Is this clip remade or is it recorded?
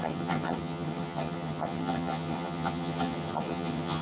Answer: remade